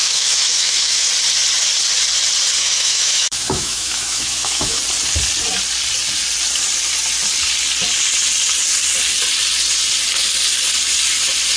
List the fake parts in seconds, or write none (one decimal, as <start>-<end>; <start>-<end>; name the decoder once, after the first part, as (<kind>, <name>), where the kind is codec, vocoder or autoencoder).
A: 0.0-1.1 (autoencoder, DAC-VAE); 2.6-4.8